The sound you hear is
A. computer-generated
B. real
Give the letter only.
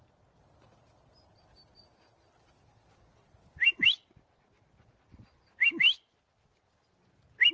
B